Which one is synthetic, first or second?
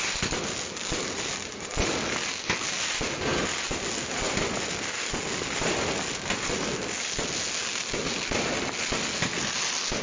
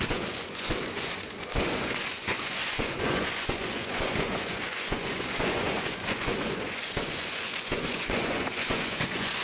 second